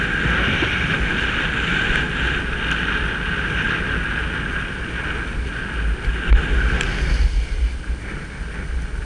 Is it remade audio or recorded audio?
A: recorded